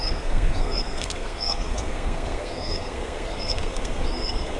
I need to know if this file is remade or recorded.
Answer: remade